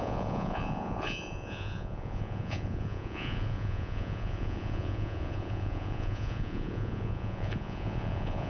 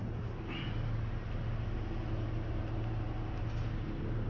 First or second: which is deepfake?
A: first